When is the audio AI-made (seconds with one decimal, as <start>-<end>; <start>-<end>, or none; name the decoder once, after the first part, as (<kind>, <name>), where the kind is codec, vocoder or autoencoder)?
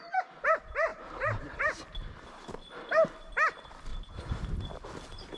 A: 0.9-2.1 (vocoder, BigVGAN v2); 3.9-4.6